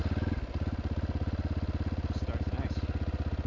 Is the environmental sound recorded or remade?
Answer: recorded